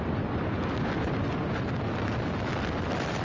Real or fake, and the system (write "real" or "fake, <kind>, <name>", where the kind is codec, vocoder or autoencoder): real